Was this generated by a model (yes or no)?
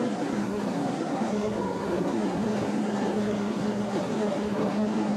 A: yes